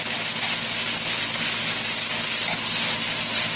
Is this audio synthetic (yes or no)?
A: no